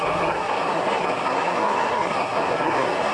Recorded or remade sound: remade